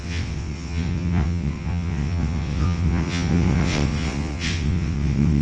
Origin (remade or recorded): remade